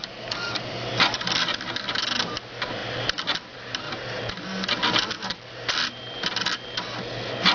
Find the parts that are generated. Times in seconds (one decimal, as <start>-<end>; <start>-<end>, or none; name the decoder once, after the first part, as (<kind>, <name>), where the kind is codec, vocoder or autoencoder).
none